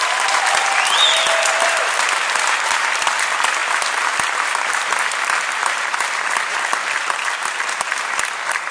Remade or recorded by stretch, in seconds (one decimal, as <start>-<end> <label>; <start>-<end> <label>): 0.0-8.7 recorded